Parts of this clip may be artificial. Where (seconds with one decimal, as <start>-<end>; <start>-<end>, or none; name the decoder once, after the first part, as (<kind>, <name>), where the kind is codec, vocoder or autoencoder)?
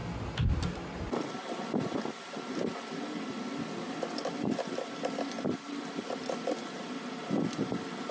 none